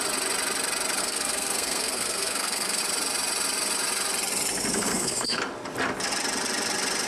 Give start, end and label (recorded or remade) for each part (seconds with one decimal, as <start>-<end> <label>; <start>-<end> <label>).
0.0-1.0 recorded; 1.0-2.8 remade; 2.8-4.7 recorded; 4.7-5.4 remade; 5.4-7.1 recorded

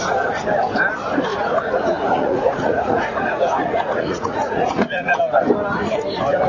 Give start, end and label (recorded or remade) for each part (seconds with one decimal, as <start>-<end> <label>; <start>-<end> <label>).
0.0-1.3 recorded; 1.3-5.2 remade; 5.2-6.5 recorded

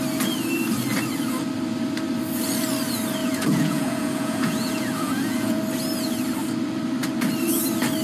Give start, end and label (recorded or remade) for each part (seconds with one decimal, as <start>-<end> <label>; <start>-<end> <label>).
0.0-3.2 recorded; 3.2-5.6 remade; 5.6-8.0 recorded

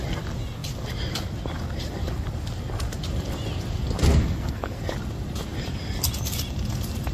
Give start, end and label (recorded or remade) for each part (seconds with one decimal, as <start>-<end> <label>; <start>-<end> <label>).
0.0-4.1 recorded; 4.1-4.8 remade; 4.8-7.1 recorded

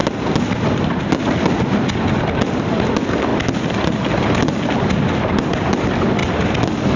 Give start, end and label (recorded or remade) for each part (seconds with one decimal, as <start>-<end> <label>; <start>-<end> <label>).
0.0-7.0 recorded

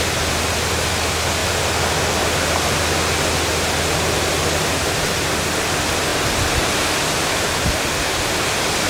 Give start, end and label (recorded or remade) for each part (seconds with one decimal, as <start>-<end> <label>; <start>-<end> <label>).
0.0-8.9 recorded

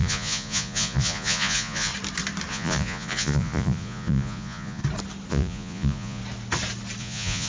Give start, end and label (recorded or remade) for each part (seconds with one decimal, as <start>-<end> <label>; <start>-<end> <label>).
0.0-1.9 remade; 1.9-2.5 recorded; 2.5-4.8 remade; 4.8-5.3 recorded; 5.3-6.2 remade; 6.2-7.0 recorded; 7.0-7.5 remade

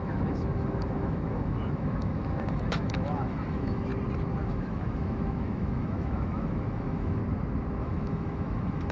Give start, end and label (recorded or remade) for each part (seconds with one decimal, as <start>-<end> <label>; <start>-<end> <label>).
0.0-3.9 remade; 3.9-4.4 recorded; 4.4-7.2 remade; 7.2-7.8 recorded; 7.8-8.9 remade